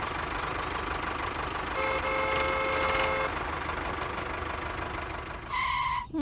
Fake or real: real